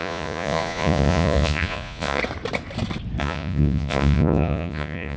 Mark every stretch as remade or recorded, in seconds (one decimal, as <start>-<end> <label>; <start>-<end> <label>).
0.0-2.2 remade; 2.2-3.2 recorded; 3.2-5.2 remade